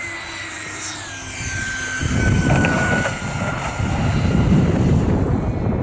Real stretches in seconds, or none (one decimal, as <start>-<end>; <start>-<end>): 0.0-5.8